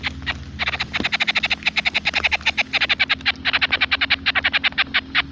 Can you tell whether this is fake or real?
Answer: real